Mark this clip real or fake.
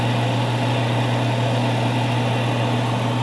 real